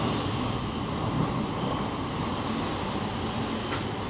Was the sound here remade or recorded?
recorded